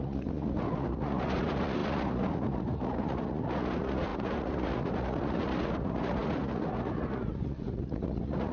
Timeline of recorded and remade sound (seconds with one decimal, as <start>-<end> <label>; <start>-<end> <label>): 0.0-8.5 remade